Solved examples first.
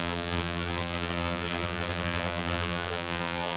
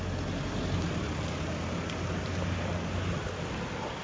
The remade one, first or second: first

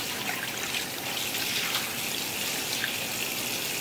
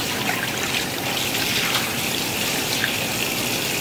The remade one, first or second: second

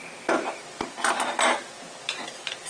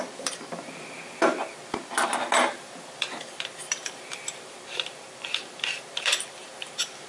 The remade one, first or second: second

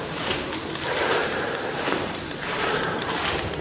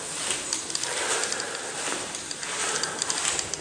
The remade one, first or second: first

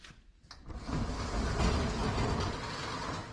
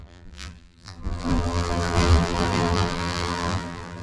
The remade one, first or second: second